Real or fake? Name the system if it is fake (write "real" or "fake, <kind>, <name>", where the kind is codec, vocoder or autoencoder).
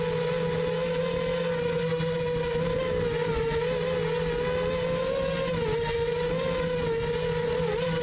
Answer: real